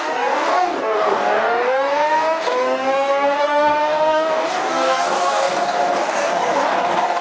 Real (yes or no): no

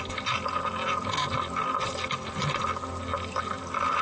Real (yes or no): yes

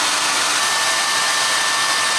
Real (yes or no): yes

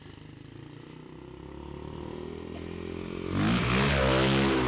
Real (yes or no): yes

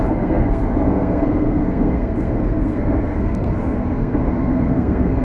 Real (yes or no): no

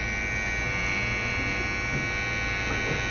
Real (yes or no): yes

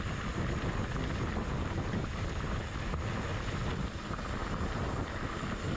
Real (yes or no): yes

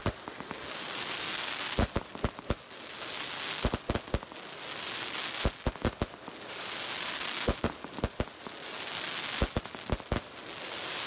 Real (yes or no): yes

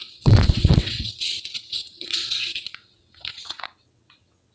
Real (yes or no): no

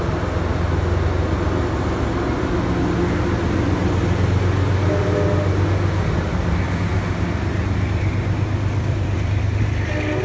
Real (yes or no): yes